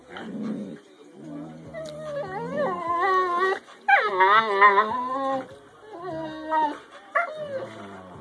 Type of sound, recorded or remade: recorded